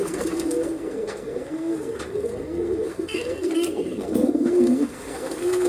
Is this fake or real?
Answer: fake